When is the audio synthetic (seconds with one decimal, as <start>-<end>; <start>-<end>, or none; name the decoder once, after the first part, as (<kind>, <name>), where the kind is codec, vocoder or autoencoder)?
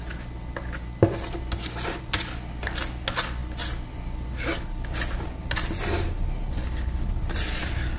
none